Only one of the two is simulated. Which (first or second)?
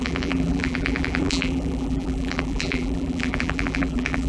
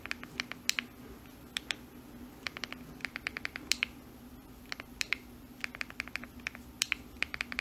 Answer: first